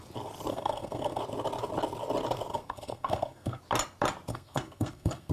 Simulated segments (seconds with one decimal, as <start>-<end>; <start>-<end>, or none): 0.5-1.2; 2.5-3.6; 4.3-5.3